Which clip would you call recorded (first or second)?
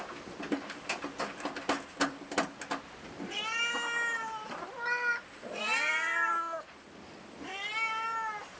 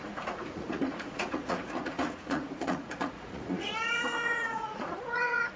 first